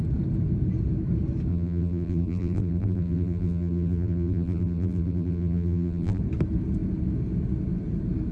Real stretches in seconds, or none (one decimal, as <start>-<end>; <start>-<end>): 0.0-1.5; 6.2-8.3